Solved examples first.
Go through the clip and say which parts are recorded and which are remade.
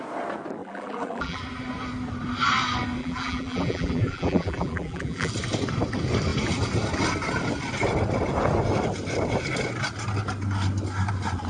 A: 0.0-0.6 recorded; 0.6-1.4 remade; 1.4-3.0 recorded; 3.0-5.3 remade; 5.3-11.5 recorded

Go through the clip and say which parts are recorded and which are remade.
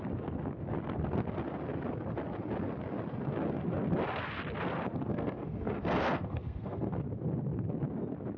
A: 0.0-5.1 recorded; 5.1-6.9 remade; 6.9-8.4 recorded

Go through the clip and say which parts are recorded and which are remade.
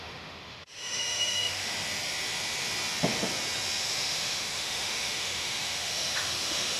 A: 0.0-1.7 remade; 1.7-3.8 recorded; 3.8-6.8 remade